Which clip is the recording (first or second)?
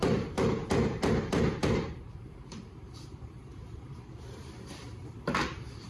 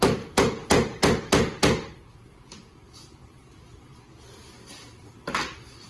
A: second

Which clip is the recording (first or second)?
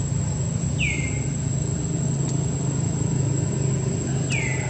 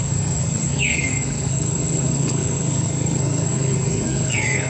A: first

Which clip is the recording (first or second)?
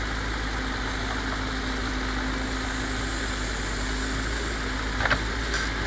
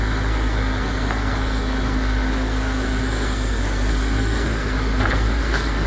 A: first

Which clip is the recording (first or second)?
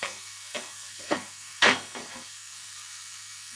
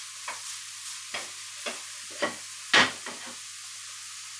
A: second